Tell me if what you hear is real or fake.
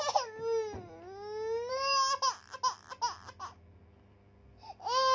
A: real